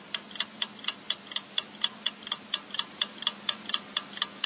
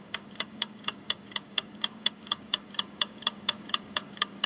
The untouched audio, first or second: first